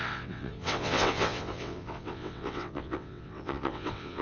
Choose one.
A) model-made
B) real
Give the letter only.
A